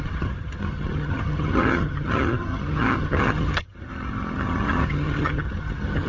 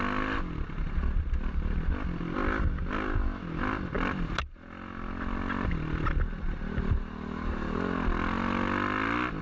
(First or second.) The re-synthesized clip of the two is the first